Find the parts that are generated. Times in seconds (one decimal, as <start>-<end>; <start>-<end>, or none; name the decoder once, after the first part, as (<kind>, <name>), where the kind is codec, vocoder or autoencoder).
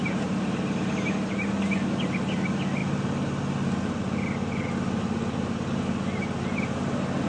none